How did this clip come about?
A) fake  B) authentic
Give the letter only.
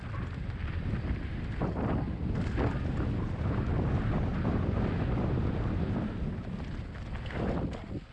B